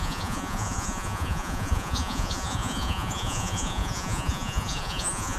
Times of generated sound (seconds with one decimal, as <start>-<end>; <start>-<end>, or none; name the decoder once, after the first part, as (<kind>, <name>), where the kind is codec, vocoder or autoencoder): 0.0-5.4 (vocoder, Vocos)